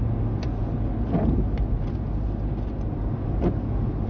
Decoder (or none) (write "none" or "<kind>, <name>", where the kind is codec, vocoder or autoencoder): none